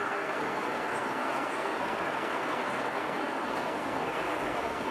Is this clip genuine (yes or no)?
no